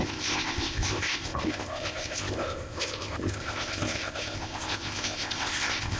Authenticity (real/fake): fake